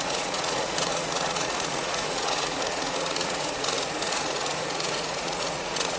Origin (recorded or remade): remade